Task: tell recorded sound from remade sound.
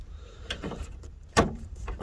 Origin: remade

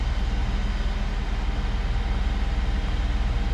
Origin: recorded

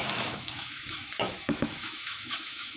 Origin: remade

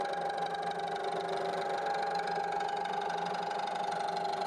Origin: recorded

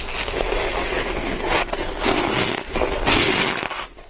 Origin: recorded